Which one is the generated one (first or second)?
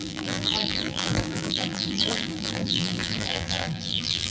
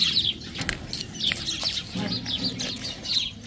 first